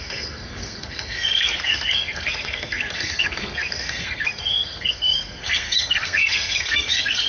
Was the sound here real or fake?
fake